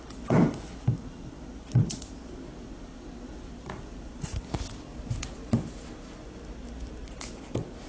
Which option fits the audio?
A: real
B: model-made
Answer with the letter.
A